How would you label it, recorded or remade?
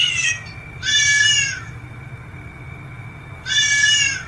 recorded